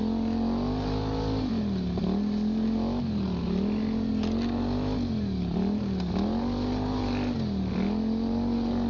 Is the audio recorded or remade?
recorded